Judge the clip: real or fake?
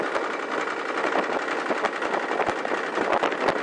real